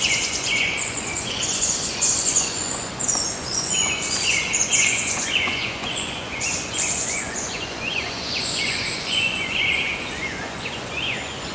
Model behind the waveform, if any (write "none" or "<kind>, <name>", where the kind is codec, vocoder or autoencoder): vocoder, Vocos